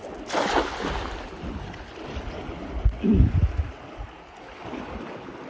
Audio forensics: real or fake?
real